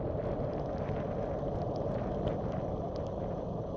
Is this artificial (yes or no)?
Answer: no